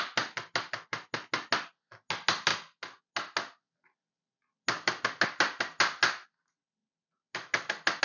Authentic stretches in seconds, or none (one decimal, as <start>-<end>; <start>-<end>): 0.0-8.0